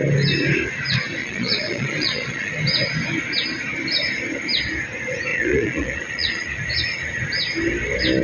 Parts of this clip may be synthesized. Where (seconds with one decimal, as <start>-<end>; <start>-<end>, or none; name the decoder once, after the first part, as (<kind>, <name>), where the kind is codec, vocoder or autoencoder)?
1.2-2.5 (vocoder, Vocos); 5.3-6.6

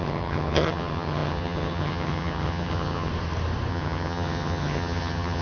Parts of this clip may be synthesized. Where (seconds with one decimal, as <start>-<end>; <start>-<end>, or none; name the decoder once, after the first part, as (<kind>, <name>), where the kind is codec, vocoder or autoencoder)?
0.0-3.1 (vocoder, HiFi-GAN); 3.7-5.4

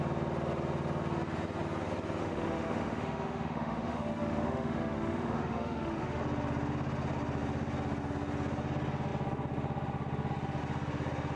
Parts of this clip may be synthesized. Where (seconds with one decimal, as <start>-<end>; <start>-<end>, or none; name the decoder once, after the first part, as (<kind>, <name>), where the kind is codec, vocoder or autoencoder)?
2.2-6.2 (autoencoder, DAC-VAE)

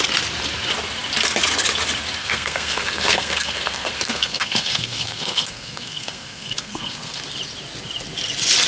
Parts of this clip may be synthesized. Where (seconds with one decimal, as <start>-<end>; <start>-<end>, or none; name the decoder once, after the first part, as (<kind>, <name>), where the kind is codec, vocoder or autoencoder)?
2.2-7.2 (codec, SNAC)

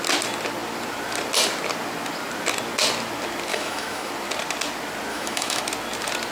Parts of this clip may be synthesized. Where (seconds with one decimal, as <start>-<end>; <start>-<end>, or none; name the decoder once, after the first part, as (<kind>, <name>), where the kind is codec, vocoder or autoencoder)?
3.5-4.1 (autoencoder, DAC-VAE); 5.1-5.6

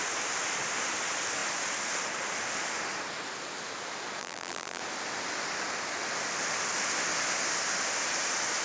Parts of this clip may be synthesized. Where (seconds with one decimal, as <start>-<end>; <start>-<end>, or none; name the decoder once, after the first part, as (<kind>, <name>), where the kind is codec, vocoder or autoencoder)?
4.2-4.8 (vocoder, BigVGAN v2)